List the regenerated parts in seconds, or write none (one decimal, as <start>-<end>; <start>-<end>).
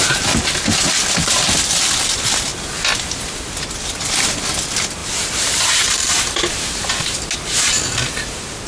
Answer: 5.0-6.5